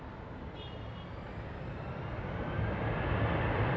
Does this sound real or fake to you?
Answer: real